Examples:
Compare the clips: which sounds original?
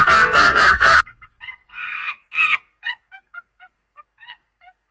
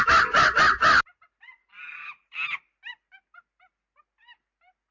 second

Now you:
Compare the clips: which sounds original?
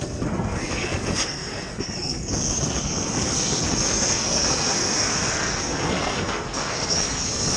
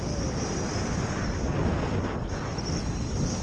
second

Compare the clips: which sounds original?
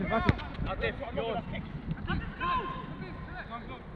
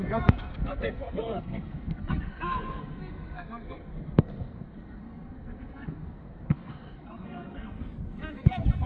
first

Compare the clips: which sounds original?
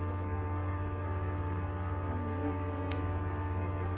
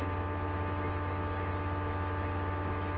second